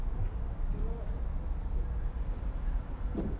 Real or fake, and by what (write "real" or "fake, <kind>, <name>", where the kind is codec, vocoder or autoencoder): real